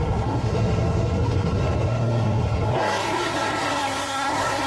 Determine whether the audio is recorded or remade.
remade